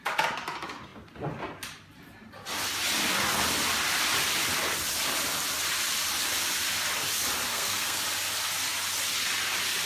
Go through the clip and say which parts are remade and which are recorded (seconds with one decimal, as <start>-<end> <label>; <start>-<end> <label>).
0.0-7.5 recorded; 7.5-8.0 remade; 8.0-9.9 recorded